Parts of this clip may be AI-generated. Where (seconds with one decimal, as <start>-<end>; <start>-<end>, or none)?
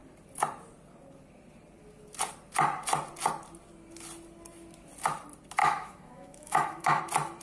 5.6-7.0